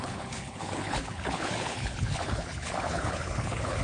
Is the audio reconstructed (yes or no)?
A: yes